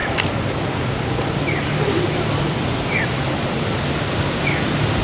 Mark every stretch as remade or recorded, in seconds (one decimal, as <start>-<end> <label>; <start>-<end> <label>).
0.0-3.0 remade; 3.0-5.0 recorded